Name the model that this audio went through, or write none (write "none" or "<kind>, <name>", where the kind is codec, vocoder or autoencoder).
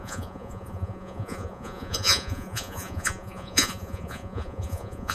vocoder, Vocos